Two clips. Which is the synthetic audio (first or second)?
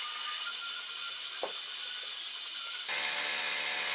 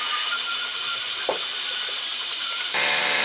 second